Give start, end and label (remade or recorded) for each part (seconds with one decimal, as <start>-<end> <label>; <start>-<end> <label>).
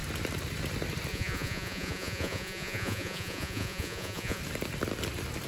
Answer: 0.0-1.1 recorded; 1.1-4.4 remade; 4.4-5.5 recorded